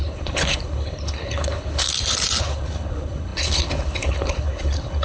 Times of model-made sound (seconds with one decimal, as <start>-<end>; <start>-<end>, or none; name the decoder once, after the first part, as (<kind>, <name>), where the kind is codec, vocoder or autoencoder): 0.0-1.9 (codec, HILCodec); 2.4-5.0